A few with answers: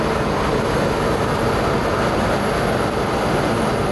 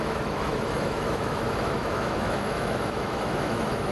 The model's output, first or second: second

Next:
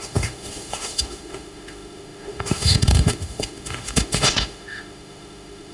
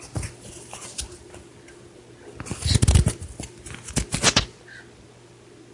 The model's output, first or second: first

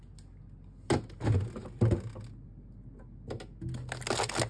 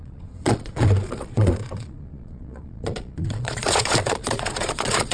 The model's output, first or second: second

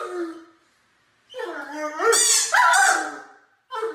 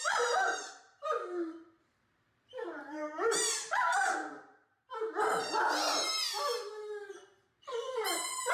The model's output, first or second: second